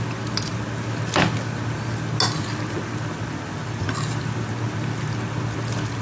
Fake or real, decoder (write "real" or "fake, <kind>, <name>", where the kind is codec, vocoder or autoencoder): real